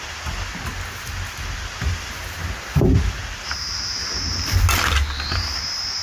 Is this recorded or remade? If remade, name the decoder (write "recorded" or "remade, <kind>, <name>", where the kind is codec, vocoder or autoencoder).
recorded